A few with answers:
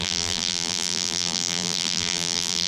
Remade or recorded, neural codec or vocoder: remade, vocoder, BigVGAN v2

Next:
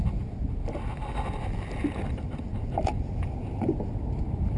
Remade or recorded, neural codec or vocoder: recorded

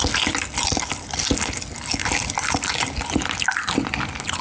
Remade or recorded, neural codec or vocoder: recorded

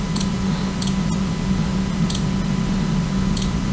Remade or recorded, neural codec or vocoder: recorded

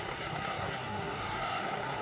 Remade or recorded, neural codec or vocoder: remade, codec, SNAC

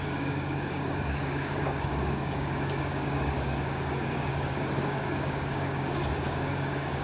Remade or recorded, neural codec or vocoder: remade, codec, DAC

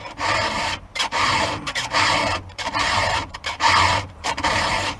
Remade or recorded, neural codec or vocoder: remade, vocoder, BigVGAN v2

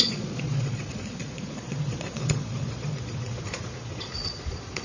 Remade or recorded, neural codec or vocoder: remade, vocoder, Vocos